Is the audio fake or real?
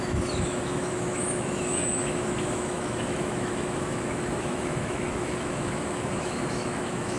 fake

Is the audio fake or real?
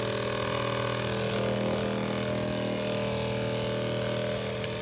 real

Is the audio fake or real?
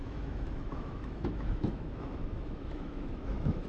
fake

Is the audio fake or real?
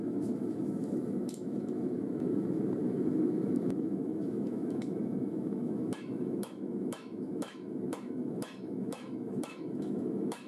fake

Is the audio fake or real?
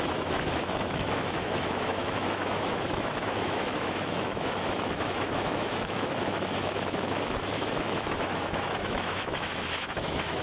fake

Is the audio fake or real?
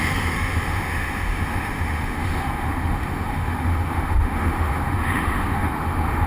fake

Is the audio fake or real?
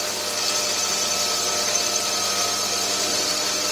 real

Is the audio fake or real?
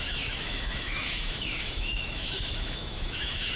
fake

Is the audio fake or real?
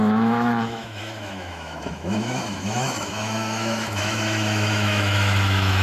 fake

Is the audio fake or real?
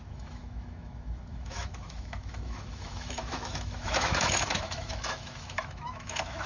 fake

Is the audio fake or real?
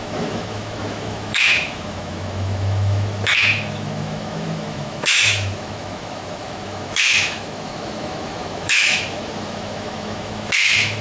fake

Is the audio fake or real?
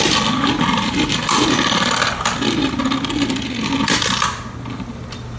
real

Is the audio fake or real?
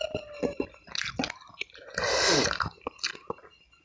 real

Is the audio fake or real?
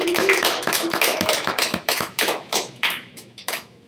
fake